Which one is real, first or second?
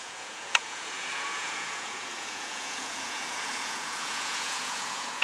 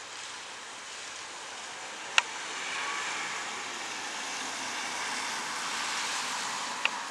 second